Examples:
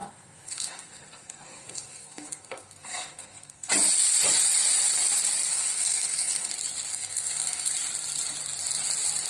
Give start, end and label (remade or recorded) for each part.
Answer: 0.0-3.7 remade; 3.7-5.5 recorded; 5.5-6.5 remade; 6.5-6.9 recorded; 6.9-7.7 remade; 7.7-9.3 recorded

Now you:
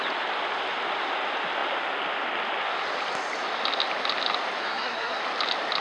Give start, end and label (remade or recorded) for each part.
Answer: 0.0-4.6 recorded; 4.6-5.2 remade; 5.2-5.8 recorded

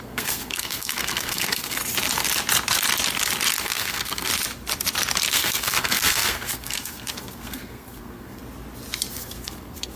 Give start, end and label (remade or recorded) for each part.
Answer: 0.0-1.8 remade; 1.8-3.6 recorded; 3.6-4.3 remade; 4.3-5.3 recorded; 5.3-8.4 remade; 8.4-9.1 recorded; 9.1-10.0 remade